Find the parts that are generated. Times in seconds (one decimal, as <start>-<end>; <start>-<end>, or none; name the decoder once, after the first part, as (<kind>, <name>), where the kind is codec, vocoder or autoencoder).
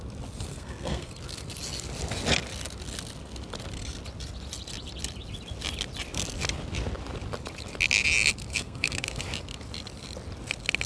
0.5-1.1 (codec, SNAC); 8.5-9.2